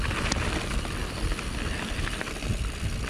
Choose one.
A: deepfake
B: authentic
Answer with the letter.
B